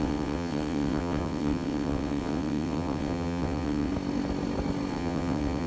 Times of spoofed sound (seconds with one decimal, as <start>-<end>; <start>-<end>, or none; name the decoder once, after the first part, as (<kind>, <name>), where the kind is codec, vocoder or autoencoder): 0.0-3.9 (vocoder, WaveNeXt); 4.9-5.7